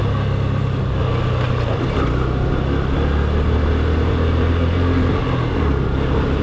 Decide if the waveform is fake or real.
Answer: real